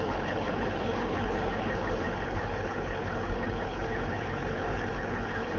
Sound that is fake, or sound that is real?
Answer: fake